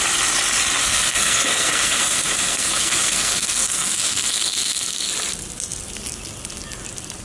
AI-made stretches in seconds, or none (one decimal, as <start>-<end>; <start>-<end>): 0.8-5.1